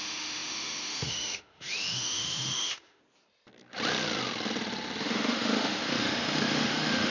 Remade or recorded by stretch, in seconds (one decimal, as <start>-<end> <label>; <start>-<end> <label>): 0.0-3.0 remade; 3.0-5.0 recorded; 5.0-7.1 remade

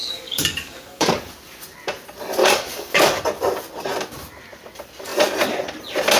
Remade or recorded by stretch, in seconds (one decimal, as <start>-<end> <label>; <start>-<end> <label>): 0.0-1.3 remade; 1.3-2.4 recorded; 2.4-3.2 remade; 3.2-6.2 recorded

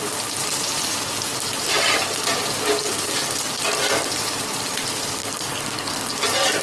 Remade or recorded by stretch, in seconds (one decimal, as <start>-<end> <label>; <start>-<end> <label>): 0.0-5.2 recorded; 5.2-6.1 remade; 6.1-6.6 recorded

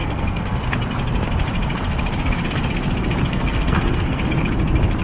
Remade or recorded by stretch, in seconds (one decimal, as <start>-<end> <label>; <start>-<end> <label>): 0.0-0.6 remade; 0.6-3.3 recorded; 3.3-4.2 remade; 4.2-5.0 recorded

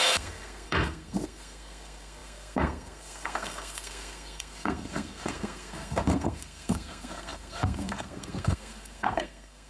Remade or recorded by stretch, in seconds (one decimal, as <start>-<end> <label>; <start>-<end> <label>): 0.0-9.7 remade